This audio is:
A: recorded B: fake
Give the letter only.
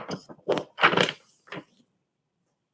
B